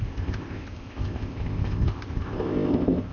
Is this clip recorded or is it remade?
remade